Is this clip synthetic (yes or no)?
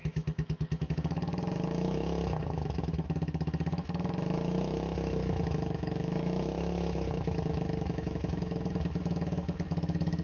yes